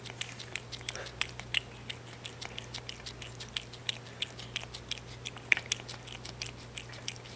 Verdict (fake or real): real